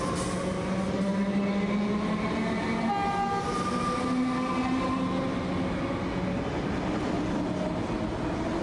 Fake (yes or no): no